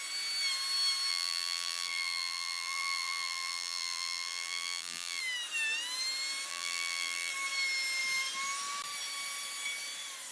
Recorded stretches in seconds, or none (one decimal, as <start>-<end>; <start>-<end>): 0.0-1.1; 5.2-6.5; 7.3-10.3